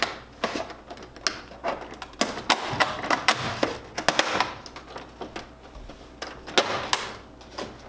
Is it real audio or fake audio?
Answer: real